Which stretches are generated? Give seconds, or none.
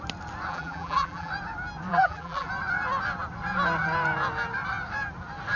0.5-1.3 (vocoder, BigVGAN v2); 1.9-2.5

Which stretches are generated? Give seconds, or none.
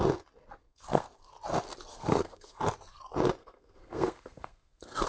0.6-1.3 (codec, SNAC); 1.9-2.6; 3.4-5.1